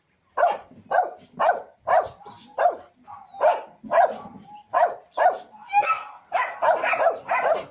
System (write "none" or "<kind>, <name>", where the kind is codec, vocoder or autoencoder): none